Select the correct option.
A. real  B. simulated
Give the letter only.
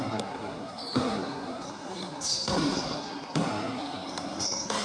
B